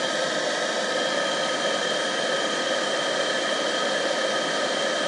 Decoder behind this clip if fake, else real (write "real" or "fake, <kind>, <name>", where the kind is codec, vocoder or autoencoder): real